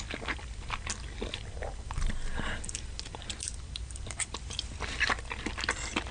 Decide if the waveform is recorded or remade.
recorded